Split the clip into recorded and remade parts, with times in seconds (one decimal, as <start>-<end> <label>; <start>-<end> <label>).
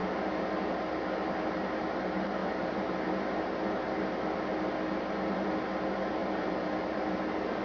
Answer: 0.0-6.2 recorded; 6.2-7.0 remade; 7.0-7.6 recorded